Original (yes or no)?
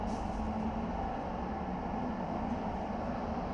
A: yes